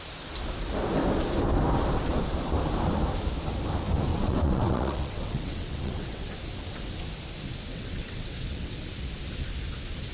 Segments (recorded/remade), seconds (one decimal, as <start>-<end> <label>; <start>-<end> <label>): 0.0-4.1 recorded; 4.1-6.3 remade; 6.3-7.7 recorded; 7.7-8.9 remade; 8.9-10.1 recorded